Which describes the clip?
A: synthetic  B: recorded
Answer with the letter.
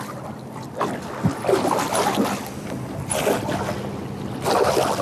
B